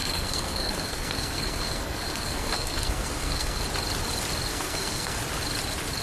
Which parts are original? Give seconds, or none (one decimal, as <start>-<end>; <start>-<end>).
3.6-4.5; 5.2-6.0